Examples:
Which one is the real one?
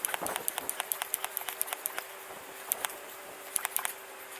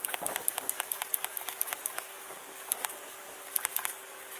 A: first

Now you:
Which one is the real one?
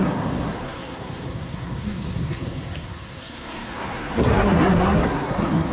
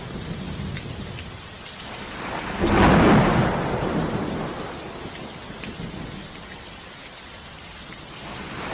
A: second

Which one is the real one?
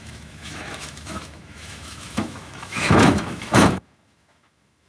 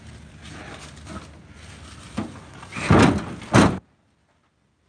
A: second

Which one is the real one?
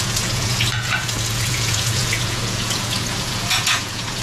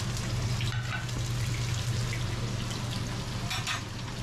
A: second